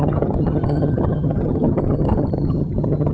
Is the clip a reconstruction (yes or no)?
yes